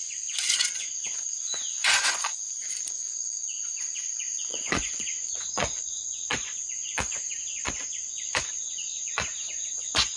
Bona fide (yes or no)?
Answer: no